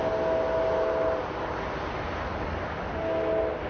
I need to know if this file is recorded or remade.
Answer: recorded